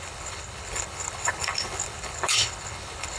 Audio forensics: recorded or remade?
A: remade